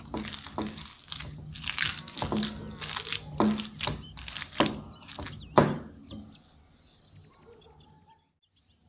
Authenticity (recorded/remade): recorded